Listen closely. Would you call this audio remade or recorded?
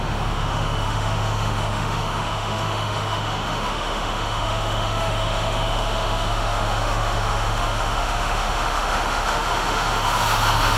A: remade